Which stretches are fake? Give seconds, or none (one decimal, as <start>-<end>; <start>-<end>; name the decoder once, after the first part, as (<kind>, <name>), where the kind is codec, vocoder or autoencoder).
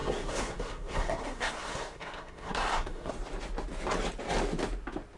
0.0-3.1 (codec, SNAC)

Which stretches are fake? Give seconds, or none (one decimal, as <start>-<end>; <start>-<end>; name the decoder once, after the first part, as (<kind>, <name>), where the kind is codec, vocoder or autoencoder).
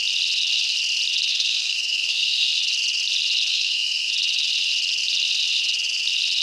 1.3-2.5 (codec, SNAC); 3.5-4.1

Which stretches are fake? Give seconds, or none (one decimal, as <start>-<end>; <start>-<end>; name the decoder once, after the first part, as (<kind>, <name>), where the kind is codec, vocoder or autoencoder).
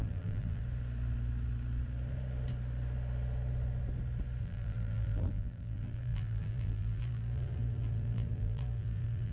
0.0-0.6 (vocoder, BigVGAN v2); 4.4-9.3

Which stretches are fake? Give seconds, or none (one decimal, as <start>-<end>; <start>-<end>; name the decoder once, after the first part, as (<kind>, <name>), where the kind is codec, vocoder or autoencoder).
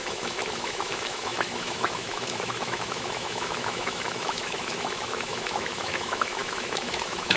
0.0-7.4 (autoencoder, DAC-VAE)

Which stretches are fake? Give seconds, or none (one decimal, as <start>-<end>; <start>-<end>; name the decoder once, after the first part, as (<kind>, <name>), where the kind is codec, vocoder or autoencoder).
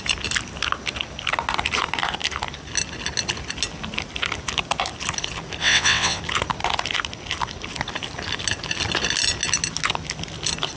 5.6-6.2 (vocoder, WaveNeXt)